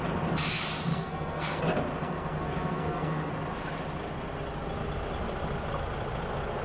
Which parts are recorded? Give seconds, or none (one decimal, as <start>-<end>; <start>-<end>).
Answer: 0.0-0.9; 1.6-2.0; 3.3-6.6